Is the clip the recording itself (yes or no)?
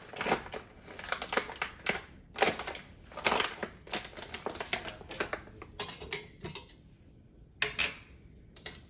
yes